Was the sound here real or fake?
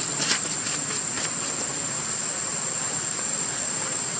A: real